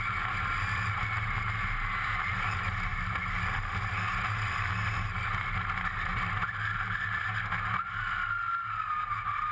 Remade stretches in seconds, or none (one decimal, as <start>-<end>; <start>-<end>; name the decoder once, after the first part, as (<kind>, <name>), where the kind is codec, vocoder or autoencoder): none